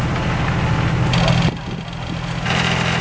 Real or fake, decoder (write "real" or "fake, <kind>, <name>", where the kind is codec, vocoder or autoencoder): real